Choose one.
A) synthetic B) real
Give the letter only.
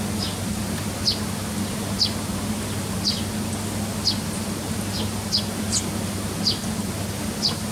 B